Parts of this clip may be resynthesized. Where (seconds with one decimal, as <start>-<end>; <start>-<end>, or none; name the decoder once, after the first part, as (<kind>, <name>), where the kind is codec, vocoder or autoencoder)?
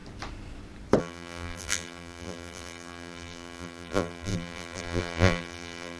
1.0-6.0 (vocoder, BigVGAN v2)